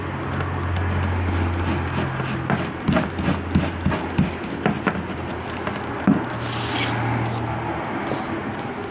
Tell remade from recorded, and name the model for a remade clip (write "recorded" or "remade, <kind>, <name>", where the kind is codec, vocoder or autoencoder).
recorded